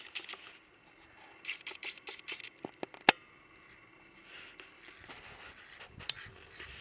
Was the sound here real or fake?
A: real